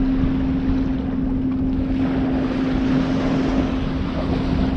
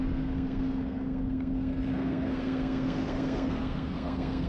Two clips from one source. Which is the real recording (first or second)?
first